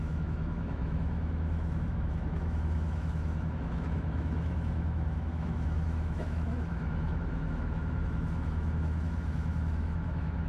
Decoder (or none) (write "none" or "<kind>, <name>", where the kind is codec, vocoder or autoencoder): autoencoder, DAC-VAE